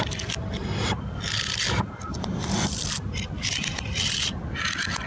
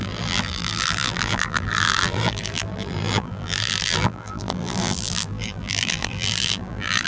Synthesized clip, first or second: second